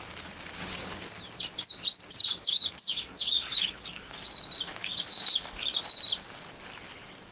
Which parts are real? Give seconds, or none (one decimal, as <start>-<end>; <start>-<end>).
0.0-0.6; 1.1-2.2; 4.3-4.7; 5.8-7.3